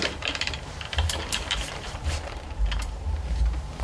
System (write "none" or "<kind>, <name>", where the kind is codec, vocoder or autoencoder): vocoder, BigVGAN v2